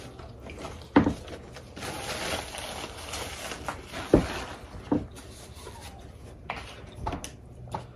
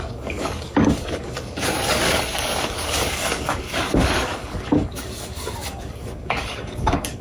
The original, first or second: first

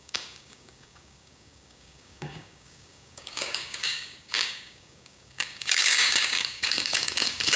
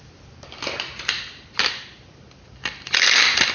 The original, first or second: second